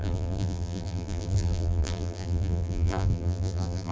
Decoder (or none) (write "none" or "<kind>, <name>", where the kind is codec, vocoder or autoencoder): vocoder, BigVGAN v2